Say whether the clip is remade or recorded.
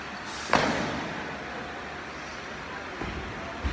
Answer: recorded